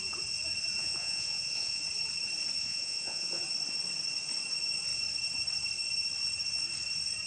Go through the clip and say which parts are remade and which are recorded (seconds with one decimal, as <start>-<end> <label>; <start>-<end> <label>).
0.0-0.8 recorded; 0.8-1.8 remade; 1.8-2.6 recorded; 2.6-3.4 remade; 3.4-7.3 recorded